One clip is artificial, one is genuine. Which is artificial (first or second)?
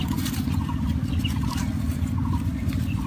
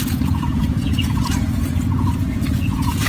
second